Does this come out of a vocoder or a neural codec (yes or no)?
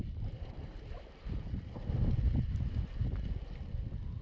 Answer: no